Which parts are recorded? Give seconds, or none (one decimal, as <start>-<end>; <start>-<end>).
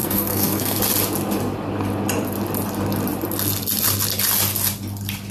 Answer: 0.8-5.3